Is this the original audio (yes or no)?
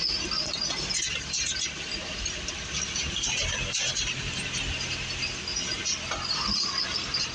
yes